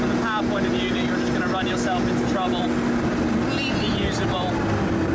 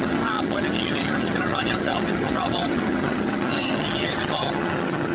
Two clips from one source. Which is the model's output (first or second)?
second